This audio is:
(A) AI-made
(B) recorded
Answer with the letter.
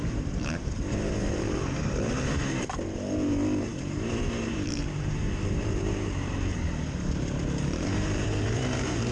A